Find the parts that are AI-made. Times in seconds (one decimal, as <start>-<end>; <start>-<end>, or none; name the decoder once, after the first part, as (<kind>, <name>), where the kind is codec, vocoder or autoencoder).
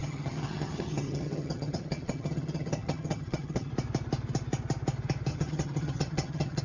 0.0-3.7 (vocoder, HiFi-GAN); 5.3-6.6